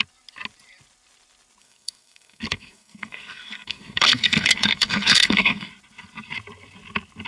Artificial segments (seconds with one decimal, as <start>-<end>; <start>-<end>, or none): 1.6-5.7